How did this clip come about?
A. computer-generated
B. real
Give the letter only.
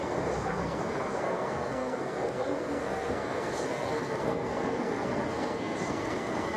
A